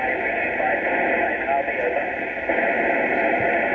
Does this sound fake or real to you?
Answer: real